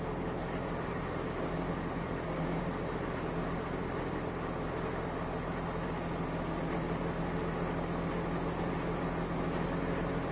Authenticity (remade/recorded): recorded